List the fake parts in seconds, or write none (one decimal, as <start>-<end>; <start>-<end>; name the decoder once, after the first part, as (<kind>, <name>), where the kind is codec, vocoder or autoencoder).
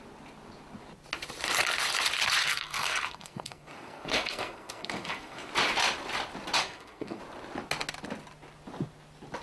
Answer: 2.4-5.5 (codec, SNAC); 6.6-7.2